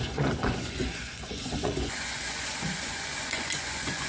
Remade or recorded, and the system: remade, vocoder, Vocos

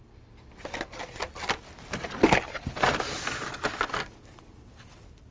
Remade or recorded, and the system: recorded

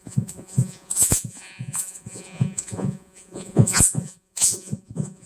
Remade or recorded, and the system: remade, vocoder, Vocos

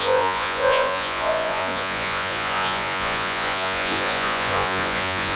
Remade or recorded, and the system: remade, vocoder, Vocos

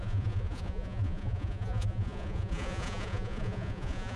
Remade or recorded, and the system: remade, vocoder, Vocos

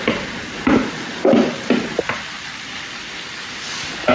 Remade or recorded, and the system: recorded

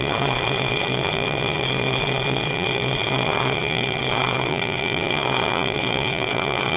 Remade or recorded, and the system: remade, vocoder, Vocos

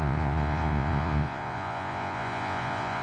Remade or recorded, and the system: remade, vocoder, Vocos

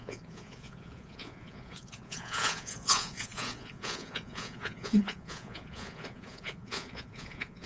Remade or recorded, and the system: remade, vocoder, Vocos